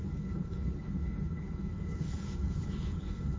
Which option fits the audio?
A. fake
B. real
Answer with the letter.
A